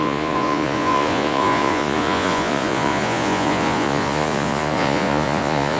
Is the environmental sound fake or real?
fake